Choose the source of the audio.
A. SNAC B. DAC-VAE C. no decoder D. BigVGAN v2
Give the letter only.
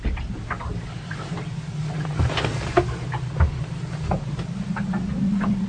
C